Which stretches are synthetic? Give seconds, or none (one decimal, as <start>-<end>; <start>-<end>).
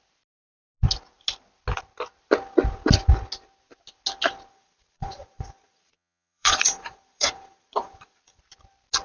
4.5-8.4